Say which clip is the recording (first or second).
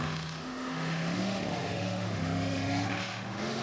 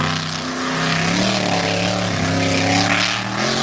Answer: second